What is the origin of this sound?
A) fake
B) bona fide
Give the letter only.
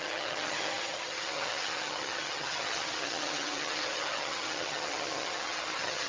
A